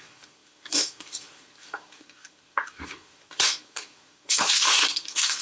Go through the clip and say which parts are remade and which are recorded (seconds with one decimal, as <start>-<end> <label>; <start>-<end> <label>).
0.0-5.4 remade